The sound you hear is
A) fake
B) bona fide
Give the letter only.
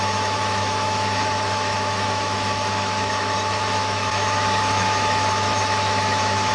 A